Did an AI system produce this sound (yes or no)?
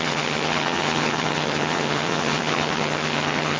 yes